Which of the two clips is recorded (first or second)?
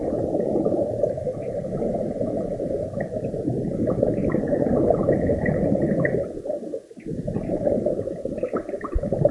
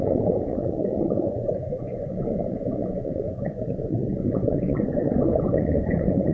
first